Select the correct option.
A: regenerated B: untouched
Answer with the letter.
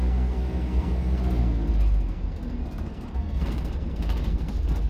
A